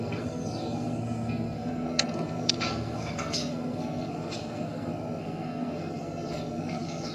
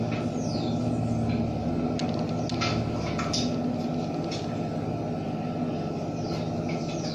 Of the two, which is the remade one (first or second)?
first